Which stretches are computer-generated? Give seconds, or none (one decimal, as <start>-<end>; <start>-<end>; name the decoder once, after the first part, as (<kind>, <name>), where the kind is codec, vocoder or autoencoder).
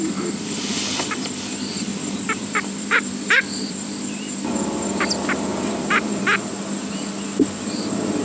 1.9-5.1 (vocoder, BigVGAN v2); 5.5-6.2